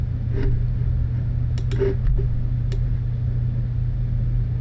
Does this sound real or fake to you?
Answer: real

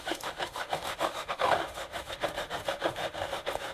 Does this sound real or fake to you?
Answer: fake